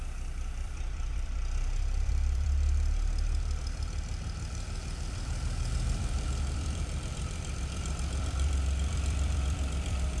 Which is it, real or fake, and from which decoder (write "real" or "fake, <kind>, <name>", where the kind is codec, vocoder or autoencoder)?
fake, vocoder, BigVGAN v2